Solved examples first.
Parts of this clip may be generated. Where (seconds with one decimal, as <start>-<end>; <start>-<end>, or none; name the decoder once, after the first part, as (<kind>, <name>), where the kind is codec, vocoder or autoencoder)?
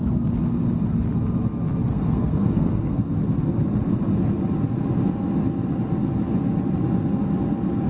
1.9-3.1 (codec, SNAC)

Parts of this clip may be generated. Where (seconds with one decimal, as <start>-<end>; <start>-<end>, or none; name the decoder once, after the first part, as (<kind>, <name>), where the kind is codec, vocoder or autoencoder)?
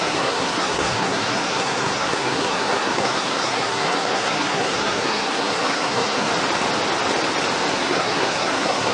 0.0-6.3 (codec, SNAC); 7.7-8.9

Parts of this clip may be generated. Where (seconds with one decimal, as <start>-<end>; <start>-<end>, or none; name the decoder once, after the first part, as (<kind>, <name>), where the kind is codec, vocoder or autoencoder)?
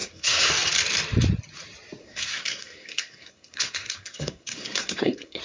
0.0-0.5 (codec, SNAC); 2.0-5.4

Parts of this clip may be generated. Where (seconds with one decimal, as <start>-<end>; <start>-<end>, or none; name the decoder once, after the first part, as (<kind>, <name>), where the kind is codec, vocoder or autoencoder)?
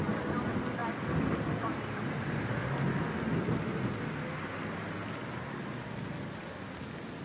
none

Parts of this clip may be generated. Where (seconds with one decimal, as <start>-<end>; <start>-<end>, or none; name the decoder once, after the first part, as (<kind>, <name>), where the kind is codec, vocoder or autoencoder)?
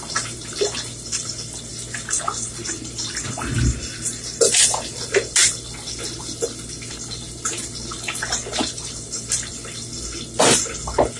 none